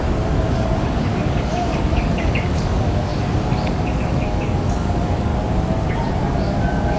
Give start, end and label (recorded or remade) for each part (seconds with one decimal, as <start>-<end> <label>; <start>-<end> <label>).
0.0-0.5 recorded; 0.5-3.1 remade; 3.1-3.7 recorded; 3.7-5.3 remade; 5.3-6.2 recorded; 6.2-7.0 remade